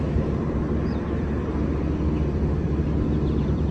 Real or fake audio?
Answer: fake